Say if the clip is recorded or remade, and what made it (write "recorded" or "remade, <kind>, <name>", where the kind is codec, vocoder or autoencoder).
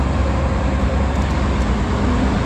recorded